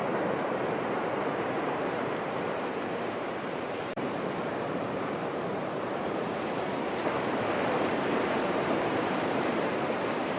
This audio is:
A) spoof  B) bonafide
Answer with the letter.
A